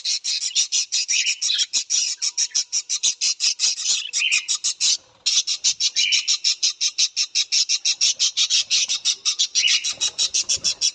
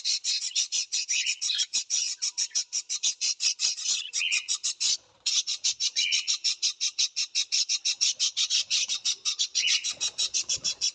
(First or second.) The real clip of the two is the first